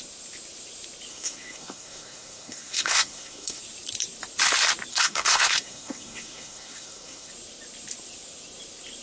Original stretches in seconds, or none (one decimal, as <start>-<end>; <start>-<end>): 0.0-1.1; 3.6-4.9; 7.3-9.0